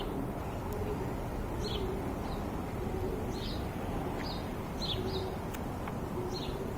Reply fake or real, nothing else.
real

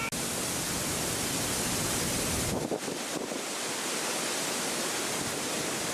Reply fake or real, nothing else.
real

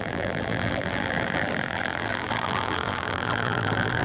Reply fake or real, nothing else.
fake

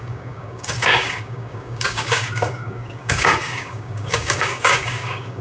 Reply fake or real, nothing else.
fake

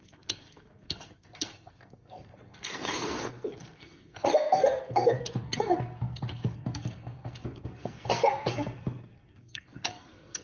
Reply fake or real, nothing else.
fake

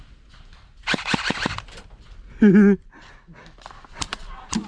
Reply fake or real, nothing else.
real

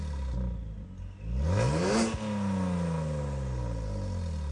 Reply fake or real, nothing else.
real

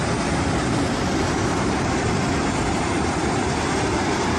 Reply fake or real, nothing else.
fake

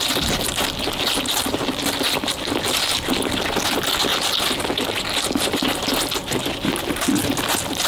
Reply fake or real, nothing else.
real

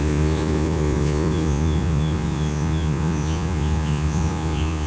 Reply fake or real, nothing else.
fake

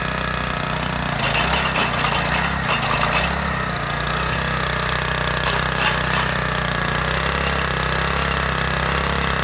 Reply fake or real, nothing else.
real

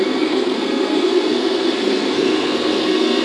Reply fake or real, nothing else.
fake